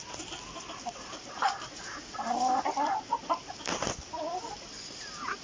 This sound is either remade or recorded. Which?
recorded